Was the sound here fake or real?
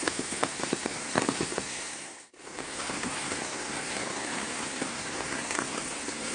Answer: fake